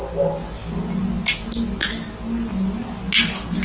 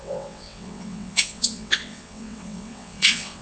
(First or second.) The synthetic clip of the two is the second